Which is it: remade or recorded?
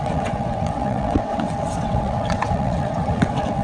remade